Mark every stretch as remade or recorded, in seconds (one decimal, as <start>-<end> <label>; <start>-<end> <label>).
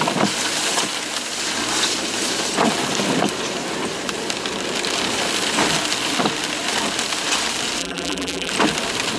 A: 0.0-7.8 recorded; 7.8-8.5 remade; 8.5-9.2 recorded